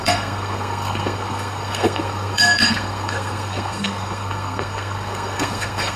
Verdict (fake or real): fake